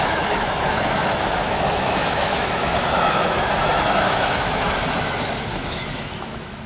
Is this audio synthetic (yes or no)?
yes